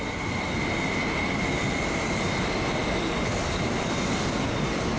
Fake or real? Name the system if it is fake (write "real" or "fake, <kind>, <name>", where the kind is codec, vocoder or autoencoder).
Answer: real